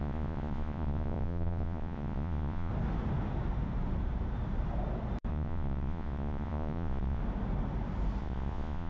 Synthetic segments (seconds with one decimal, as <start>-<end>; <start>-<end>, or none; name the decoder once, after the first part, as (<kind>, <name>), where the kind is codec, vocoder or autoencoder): 0.0-2.7 (vocoder, Vocos); 5.3-7.2; 8.2-8.9